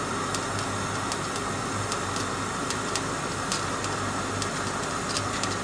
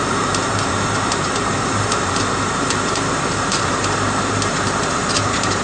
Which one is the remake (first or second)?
second